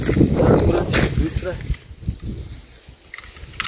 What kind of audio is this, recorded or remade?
recorded